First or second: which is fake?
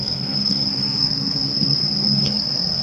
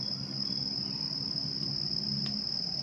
first